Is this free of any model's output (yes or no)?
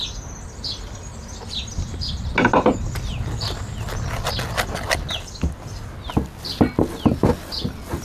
yes